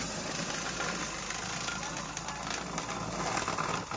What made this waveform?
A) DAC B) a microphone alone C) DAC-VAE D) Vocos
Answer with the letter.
B